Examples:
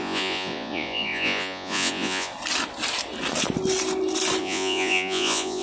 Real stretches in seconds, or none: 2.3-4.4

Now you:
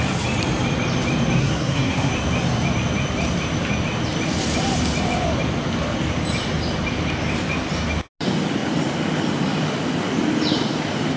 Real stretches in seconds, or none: 0.0-1.4; 2.1-11.2

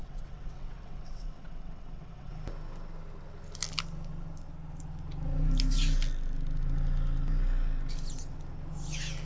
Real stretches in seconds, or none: 2.3-9.3

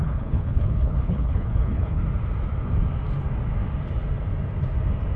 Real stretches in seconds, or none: 2.0-5.2

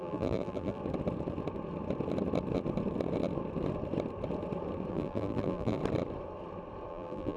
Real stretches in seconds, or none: 0.8-4.9; 5.8-6.9

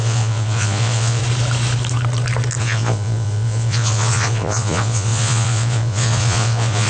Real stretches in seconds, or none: 1.2-2.6

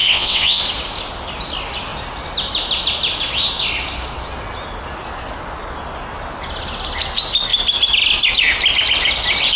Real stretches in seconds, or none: 0.6-9.6